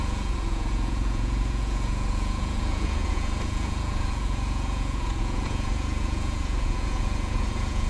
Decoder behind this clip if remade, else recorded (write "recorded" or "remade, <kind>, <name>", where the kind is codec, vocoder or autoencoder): remade, vocoder, Vocos